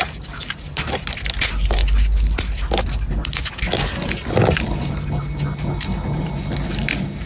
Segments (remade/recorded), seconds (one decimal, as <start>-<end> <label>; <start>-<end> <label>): 0.0-7.3 recorded

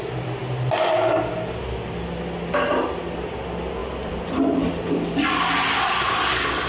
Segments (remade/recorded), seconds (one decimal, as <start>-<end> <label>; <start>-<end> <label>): 0.0-6.7 recorded

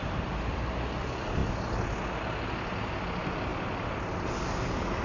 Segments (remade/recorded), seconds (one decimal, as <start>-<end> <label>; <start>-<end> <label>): 0.0-5.0 recorded

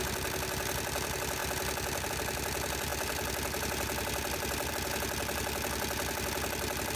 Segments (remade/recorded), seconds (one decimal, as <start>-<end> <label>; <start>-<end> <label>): 0.0-2.9 recorded; 2.9-4.7 remade; 4.7-7.0 recorded

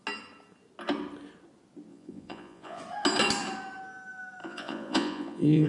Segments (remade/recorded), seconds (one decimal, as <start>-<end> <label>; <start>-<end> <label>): 0.0-1.9 recorded; 1.9-2.8 remade; 2.8-4.4 recorded; 4.4-5.7 remade